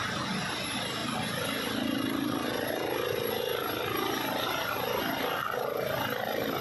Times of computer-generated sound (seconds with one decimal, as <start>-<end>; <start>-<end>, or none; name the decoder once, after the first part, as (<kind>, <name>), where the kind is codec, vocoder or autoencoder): none